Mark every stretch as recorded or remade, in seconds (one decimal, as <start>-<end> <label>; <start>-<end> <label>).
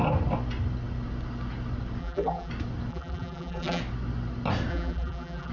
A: 0.0-2.0 recorded; 2.0-2.5 remade; 2.5-2.9 recorded; 2.9-3.8 remade; 3.8-4.7 recorded; 4.7-5.5 remade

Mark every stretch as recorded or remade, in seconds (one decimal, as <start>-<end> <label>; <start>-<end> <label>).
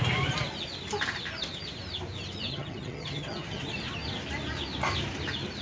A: 0.0-2.5 recorded; 2.5-3.6 remade; 3.6-5.6 recorded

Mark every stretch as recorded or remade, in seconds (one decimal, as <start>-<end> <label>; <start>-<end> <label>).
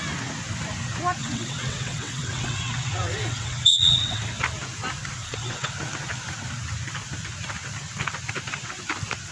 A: 0.0-1.2 recorded; 1.2-4.2 remade; 4.2-5.2 recorded; 5.2-5.7 remade; 5.7-9.3 recorded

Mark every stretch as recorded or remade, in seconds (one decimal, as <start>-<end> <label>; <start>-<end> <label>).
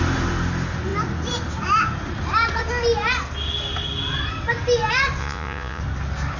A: 0.0-5.2 recorded; 5.2-5.8 remade; 5.8-6.4 recorded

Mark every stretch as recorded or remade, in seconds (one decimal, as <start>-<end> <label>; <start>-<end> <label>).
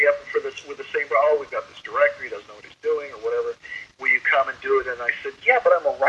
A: 0.0-0.6 recorded; 0.6-3.6 remade; 3.6-6.1 recorded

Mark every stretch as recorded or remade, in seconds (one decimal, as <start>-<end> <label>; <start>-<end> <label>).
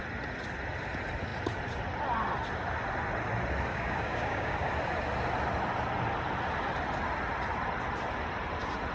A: 0.0-3.7 recorded; 3.7-4.7 remade; 4.7-8.9 recorded